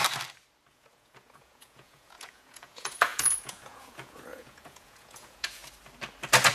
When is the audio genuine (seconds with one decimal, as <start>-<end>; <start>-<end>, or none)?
0.0-0.7; 5.6-6.5